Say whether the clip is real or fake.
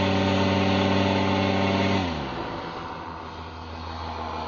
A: real